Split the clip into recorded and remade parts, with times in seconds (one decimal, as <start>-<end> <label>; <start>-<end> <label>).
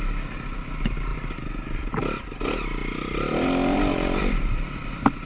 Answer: 0.0-1.1 recorded; 1.1-1.9 remade; 1.9-2.8 recorded; 2.8-5.3 remade